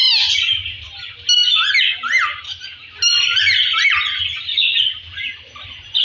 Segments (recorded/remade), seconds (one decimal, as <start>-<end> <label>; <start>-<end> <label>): 0.0-6.0 recorded